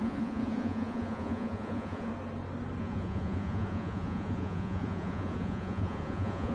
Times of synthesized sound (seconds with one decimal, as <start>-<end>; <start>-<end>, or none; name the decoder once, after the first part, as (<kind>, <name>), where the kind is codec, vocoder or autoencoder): 0.0-2.1 (vocoder, Vocos); 2.8-6.5